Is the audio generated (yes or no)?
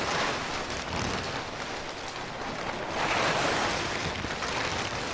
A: no